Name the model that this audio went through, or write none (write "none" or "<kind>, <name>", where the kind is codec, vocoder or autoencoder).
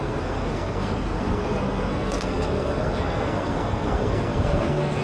codec, SNAC